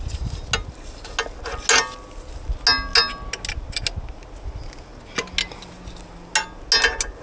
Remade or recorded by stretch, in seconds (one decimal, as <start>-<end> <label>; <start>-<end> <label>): 0.0-7.2 recorded